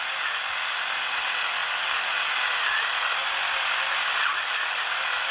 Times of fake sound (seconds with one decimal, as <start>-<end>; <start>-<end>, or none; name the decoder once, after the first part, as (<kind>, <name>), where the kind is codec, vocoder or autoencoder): none